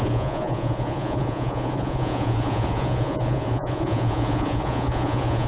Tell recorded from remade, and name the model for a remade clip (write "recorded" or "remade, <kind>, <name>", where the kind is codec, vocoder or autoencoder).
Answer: remade, vocoder, Vocos